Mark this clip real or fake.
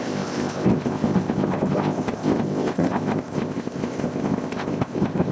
fake